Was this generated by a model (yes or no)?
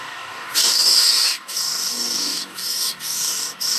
yes